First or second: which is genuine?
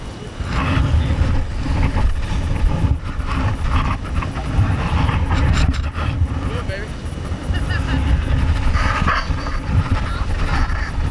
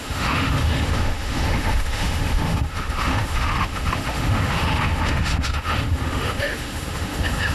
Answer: first